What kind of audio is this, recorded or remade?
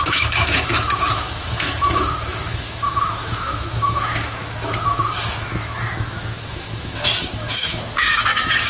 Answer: remade